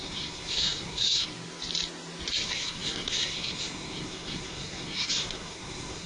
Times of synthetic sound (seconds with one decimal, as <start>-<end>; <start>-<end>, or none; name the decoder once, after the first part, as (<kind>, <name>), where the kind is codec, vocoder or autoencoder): 0.0-1.3 (codec, SNAC); 2.3-6.1